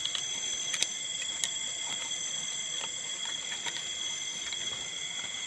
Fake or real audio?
real